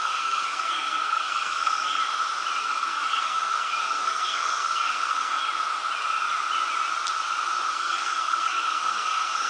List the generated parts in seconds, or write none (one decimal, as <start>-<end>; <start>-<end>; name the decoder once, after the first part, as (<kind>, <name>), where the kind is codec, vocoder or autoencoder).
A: 0.0-2.0 (codec, SNAC); 2.6-5.4; 7.7-9.5